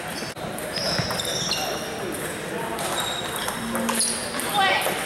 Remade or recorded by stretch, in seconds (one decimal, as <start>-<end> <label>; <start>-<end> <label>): 0.0-5.1 recorded